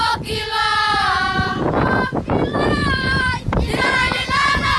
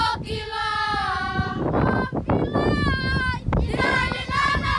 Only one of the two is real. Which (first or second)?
second